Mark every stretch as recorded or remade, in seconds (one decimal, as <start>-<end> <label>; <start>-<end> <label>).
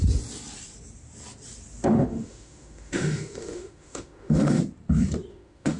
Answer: 0.0-1.9 recorded; 1.9-4.6 remade; 4.6-5.3 recorded; 5.3-5.8 remade